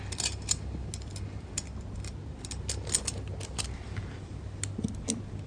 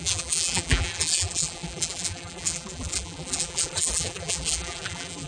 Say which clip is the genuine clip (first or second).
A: first